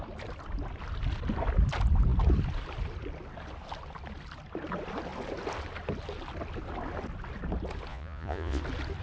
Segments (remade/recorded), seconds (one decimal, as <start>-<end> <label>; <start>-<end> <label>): 0.0-7.9 recorded; 7.9-8.6 remade; 8.6-9.0 recorded